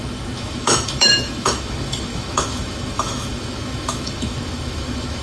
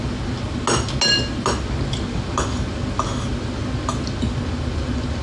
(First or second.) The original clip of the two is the second